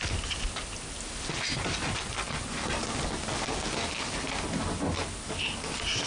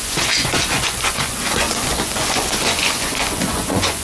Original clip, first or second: first